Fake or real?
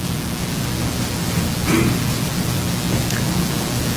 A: real